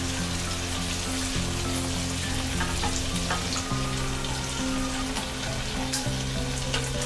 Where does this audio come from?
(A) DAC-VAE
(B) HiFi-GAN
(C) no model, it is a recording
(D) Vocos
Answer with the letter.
C